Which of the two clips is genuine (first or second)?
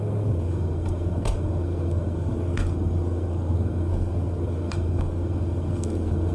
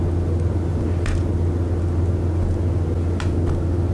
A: second